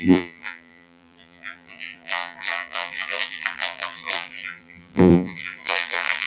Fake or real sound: fake